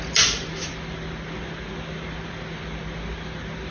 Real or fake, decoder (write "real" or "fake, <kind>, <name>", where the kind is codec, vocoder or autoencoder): real